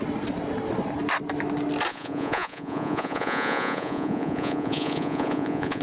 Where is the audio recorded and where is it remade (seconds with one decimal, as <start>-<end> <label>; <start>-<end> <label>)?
0.0-1.9 recorded; 1.9-5.8 remade

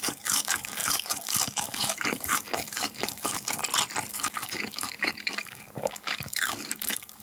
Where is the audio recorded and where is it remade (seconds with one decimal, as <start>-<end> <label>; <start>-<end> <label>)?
0.0-3.6 remade; 3.6-4.1 recorded; 4.1-7.2 remade

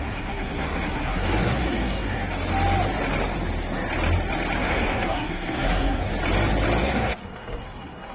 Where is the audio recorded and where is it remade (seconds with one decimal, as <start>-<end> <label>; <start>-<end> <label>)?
0.0-2.2 remade; 2.2-4.6 recorded; 4.6-6.1 remade; 6.1-6.8 recorded; 6.8-8.1 remade

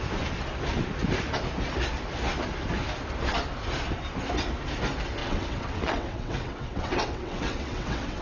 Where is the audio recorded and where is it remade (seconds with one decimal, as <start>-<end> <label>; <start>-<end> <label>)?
0.0-5.2 recorded; 5.2-8.2 remade

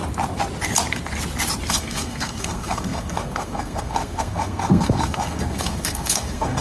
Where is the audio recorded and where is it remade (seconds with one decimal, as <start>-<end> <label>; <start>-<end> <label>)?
0.0-1.7 recorded; 1.7-6.6 remade

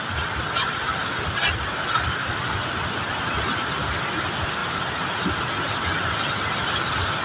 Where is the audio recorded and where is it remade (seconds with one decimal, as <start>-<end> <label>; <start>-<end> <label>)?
0.0-7.2 recorded

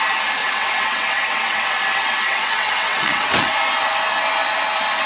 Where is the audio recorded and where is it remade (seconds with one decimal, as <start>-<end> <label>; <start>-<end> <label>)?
0.0-0.4 recorded; 0.4-3.5 remade; 3.5-5.1 recorded